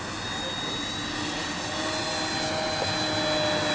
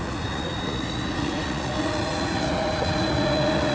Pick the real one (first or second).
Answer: first